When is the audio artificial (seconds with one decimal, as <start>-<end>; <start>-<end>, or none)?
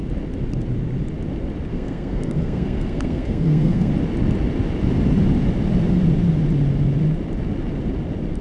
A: 1.7-3.9